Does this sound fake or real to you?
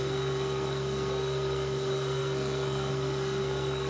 fake